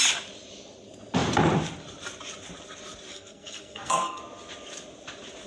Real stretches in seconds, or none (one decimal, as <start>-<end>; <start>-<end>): 0.0-3.1; 4.2-5.5